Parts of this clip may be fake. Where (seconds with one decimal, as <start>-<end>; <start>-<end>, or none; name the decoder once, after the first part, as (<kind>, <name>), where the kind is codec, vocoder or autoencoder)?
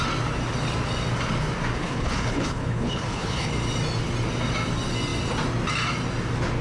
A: 1.8-3.5 (codec, HILCodec)